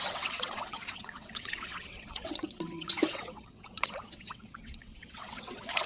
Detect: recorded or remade remade